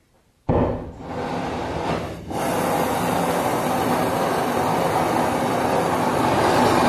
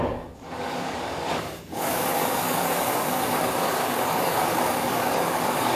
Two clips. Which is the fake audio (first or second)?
second